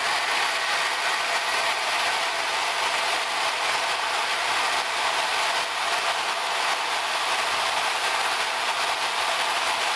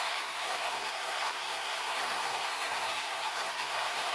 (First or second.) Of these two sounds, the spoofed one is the second